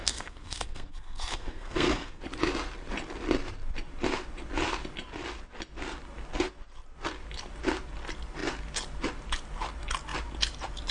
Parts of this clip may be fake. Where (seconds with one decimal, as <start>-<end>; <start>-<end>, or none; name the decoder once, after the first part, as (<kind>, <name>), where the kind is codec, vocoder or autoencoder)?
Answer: 0.0-2.2 (codec, SNAC)